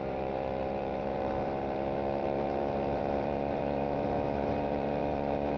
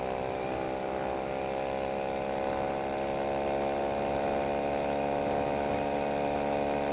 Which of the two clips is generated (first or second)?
first